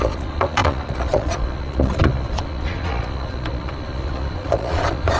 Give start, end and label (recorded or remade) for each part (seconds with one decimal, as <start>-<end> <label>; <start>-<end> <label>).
0.0-5.2 remade